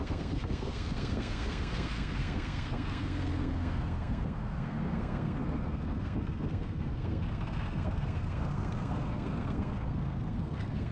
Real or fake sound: fake